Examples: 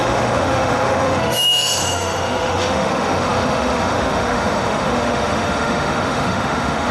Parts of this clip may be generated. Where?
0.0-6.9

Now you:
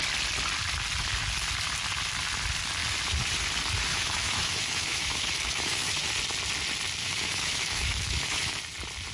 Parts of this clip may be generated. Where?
3.9-6.1; 7.0-8.6

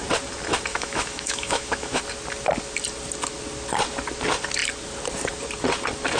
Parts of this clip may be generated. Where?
0.7-2.0

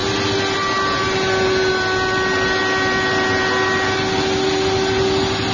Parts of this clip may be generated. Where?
none

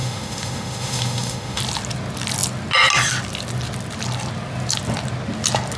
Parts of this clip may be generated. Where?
0.0-1.6